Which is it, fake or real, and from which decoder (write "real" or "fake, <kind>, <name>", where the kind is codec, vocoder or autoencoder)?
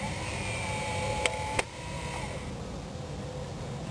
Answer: real